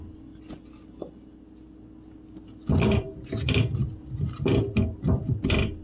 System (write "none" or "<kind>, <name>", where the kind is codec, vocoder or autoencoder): none